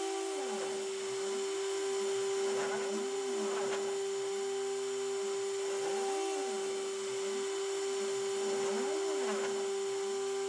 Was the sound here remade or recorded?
recorded